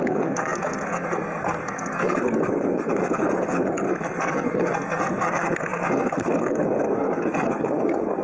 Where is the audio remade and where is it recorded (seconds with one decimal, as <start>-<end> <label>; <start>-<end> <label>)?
0.0-8.2 remade